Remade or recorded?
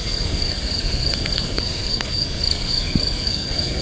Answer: remade